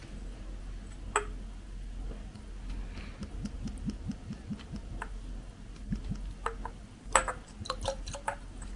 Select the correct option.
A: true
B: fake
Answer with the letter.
A